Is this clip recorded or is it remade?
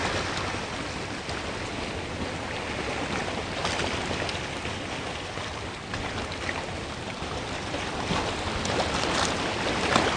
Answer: recorded